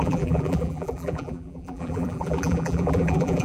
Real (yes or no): no